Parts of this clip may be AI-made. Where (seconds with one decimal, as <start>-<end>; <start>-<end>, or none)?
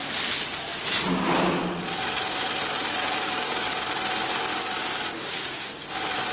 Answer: 3.0-3.7; 4.5-5.8